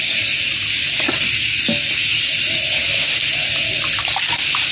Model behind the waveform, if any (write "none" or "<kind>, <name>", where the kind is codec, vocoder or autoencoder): none